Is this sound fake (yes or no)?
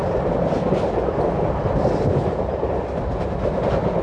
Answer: no